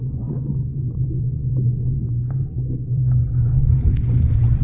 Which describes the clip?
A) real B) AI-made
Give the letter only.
B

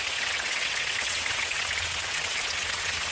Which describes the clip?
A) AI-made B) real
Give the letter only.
A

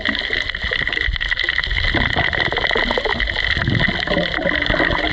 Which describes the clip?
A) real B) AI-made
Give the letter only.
A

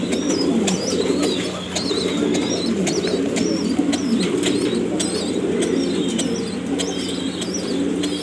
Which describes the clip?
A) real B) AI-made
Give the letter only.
A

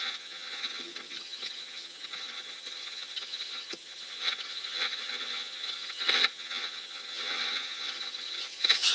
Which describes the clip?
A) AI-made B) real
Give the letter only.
A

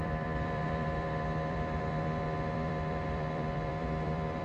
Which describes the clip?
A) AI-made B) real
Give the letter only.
A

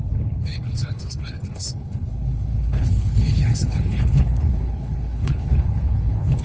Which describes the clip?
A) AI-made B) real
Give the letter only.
A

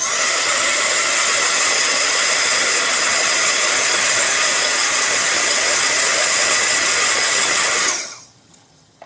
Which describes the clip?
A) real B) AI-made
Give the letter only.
B